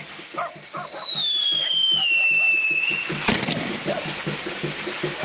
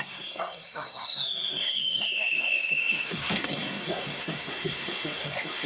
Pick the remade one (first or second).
second